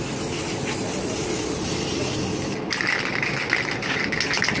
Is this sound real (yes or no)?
yes